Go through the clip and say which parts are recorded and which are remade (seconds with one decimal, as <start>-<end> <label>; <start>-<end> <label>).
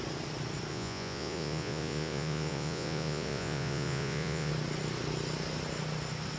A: 0.0-0.7 recorded; 0.7-4.5 remade; 4.5-6.4 recorded